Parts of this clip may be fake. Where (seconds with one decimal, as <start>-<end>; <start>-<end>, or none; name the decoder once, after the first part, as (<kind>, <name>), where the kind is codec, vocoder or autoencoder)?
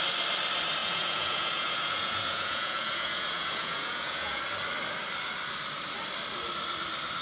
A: 0.8-4.4 (vocoder, Vocos)